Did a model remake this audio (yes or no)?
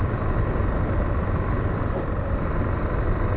no